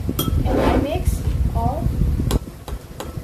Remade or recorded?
recorded